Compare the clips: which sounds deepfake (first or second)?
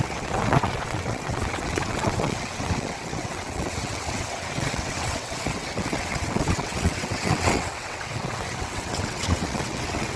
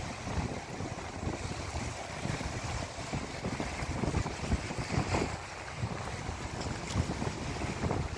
first